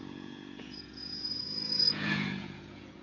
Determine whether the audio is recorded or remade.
remade